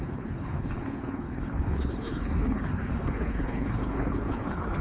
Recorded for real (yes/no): no